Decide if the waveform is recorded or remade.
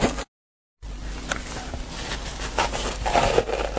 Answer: recorded